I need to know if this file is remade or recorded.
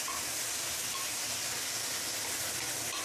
recorded